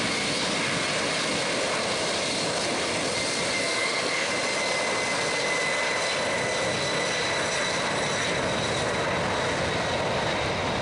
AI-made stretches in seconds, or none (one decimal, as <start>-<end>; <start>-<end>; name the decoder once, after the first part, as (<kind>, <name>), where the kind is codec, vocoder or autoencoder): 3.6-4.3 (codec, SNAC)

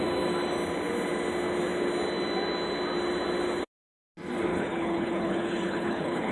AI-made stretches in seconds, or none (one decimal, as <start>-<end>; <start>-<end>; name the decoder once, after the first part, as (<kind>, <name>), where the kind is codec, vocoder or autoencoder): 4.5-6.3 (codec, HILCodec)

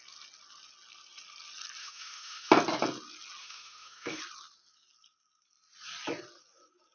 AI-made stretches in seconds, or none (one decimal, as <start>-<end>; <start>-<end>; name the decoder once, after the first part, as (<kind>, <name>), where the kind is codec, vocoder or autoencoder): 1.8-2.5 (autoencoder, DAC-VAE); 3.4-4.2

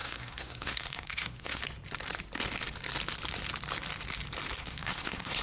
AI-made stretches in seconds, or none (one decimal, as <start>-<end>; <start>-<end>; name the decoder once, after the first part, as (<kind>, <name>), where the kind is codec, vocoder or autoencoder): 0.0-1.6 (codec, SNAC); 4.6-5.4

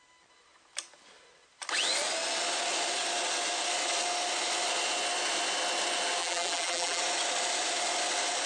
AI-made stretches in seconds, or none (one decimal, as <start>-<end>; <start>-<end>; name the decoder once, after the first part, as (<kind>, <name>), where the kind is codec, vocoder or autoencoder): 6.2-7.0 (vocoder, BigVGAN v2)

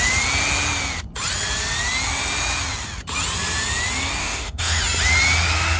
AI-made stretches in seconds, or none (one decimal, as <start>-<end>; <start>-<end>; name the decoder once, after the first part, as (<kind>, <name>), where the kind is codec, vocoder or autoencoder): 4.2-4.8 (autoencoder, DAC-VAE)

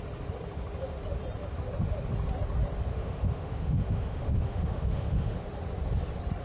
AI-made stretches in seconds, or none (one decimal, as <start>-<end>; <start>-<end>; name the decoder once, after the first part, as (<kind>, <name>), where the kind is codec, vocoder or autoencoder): 2.9-5.4 (autoencoder, DAC-VAE)